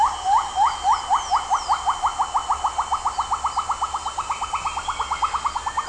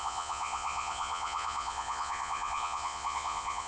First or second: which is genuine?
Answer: first